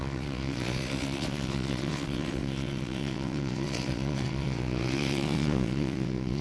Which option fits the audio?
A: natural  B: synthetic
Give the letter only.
B